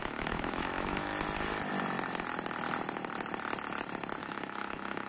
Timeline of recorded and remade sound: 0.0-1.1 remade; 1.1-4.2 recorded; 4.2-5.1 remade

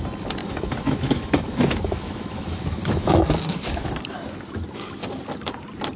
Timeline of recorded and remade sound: 0.0-0.4 recorded; 0.4-4.0 remade; 4.0-6.0 recorded

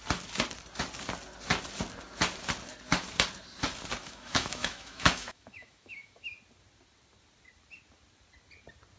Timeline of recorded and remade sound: 0.0-4.0 recorded; 4.0-6.3 remade; 6.3-9.0 recorded

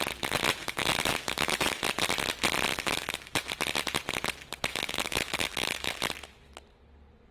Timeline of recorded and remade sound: 0.0-0.6 recorded; 0.6-1.8 remade; 1.8-2.7 recorded; 2.7-3.5 remade; 3.5-4.7 recorded; 4.7-5.9 remade; 5.9-7.3 recorded

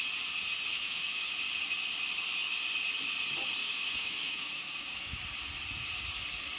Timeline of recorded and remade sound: 0.0-0.7 recorded; 0.7-1.4 remade; 1.4-3.6 recorded; 3.6-5.2 remade; 5.2-6.6 recorded

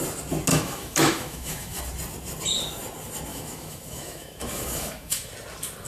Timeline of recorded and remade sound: 0.0-0.5 recorded; 0.5-1.8 remade; 1.8-3.3 recorded; 3.3-5.3 remade; 5.3-5.9 recorded

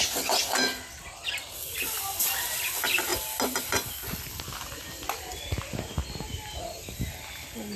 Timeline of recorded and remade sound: 0.0-7.8 recorded